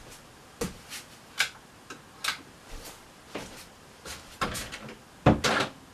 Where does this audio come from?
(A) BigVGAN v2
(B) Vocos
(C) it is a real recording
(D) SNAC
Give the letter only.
C